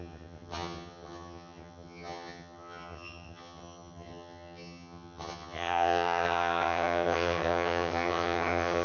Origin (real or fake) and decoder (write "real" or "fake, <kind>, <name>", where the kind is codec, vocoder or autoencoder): fake, vocoder, HiFi-GAN